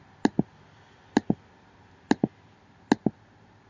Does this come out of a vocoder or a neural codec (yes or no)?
no